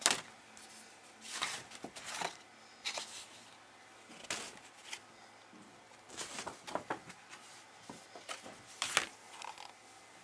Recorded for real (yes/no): yes